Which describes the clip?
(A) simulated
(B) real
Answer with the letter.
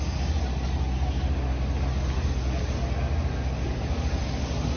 B